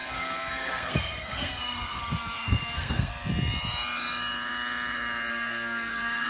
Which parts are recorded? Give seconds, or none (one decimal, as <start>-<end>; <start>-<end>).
3.1-5.3